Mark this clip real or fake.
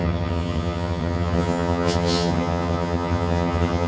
fake